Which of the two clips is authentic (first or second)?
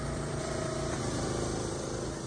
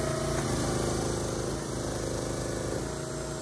second